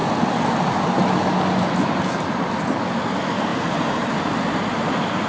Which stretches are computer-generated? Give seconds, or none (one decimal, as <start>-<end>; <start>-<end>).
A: 3.5-4.1